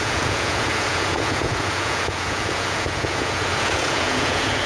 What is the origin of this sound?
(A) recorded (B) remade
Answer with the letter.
B